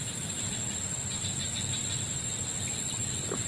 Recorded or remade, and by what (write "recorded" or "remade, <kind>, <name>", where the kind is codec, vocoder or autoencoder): remade, vocoder, BigVGAN v2